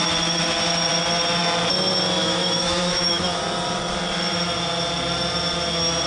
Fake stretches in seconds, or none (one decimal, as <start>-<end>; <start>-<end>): 2.2-3.4